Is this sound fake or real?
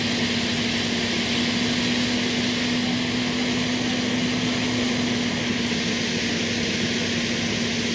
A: real